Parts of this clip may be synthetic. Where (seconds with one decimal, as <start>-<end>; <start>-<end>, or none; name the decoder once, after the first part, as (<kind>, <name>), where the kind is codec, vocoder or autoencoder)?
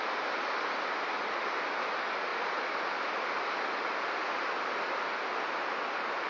none